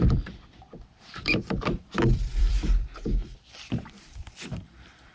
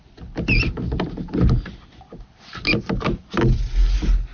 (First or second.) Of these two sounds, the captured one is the second